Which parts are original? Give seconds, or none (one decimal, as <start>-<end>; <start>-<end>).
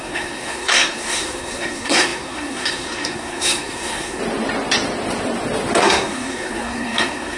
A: 4.2-5.8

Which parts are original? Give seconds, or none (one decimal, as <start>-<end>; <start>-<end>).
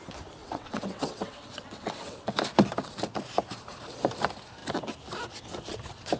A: 0.0-0.4; 2.3-6.2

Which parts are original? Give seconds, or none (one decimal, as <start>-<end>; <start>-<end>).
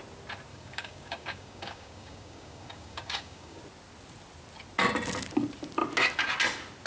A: 0.0-0.5; 3.6-6.9